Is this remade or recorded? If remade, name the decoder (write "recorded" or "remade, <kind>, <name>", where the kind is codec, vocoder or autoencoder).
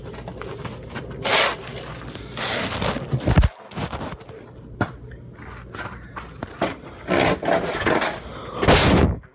recorded